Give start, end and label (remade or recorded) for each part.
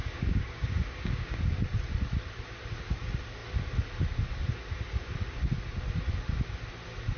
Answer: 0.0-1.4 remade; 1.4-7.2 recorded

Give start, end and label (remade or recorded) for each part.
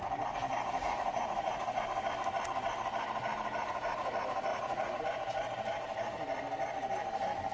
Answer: 0.0-0.8 recorded; 0.8-1.8 remade; 1.8-4.5 recorded; 4.5-5.0 remade; 5.0-7.5 recorded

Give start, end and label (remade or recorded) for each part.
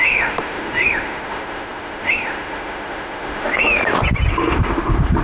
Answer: 0.0-3.8 remade; 3.8-4.3 recorded; 4.3-5.2 remade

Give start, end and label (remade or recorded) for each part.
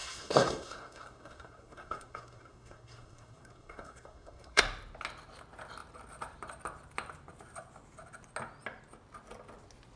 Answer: 0.0-4.6 remade; 4.6-10.0 recorded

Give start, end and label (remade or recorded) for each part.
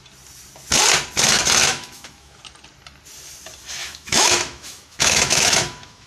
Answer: 0.0-1.6 recorded; 1.6-2.4 remade; 2.4-3.8 recorded; 3.8-6.1 remade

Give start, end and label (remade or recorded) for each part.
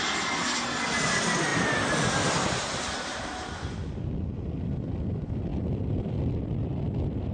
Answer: 0.0-7.3 recorded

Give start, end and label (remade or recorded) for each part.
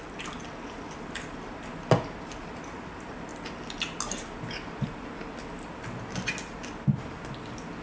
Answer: 0.0-7.8 recorded